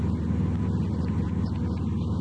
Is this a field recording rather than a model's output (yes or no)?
yes